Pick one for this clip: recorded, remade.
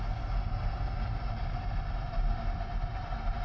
recorded